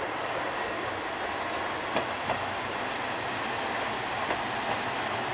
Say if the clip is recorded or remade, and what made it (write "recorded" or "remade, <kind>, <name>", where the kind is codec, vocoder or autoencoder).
recorded